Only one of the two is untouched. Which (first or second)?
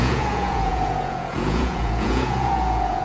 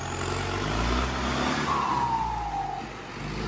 second